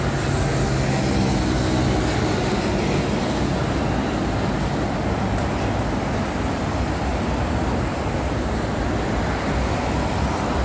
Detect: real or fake real